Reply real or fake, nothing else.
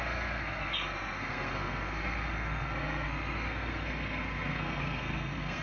fake